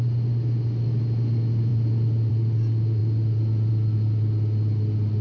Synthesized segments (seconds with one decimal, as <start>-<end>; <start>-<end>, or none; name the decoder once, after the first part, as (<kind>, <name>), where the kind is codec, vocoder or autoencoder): none

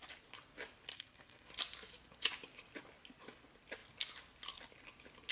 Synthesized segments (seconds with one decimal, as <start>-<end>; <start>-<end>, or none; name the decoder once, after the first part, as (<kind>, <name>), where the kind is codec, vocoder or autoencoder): 0.9-1.5 (codec, SNAC)

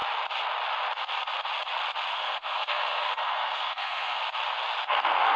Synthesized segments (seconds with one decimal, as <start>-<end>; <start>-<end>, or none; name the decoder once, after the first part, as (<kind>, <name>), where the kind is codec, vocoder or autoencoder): 2.1-4.2 (codec, SNAC); 4.8-5.4